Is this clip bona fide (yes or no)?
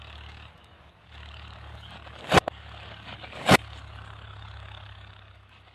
no